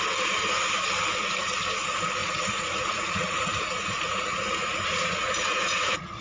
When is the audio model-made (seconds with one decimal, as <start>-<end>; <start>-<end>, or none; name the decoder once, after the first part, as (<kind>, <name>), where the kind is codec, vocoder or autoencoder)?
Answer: 2.2-6.2 (vocoder, Vocos)